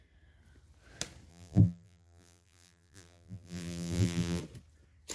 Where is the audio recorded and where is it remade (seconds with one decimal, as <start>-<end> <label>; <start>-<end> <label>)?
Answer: 0.0-1.3 recorded; 1.3-4.4 remade; 4.4-5.1 recorded